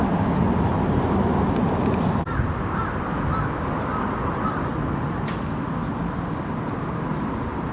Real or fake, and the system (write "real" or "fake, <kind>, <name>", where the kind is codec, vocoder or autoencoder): real